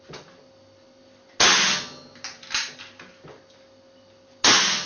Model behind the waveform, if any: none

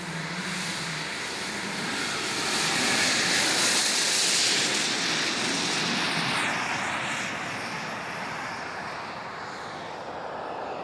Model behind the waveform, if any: none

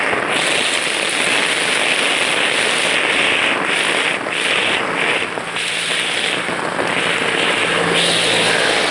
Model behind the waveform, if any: none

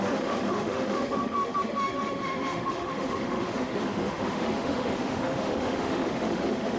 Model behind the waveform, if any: autoencoder, DAC-VAE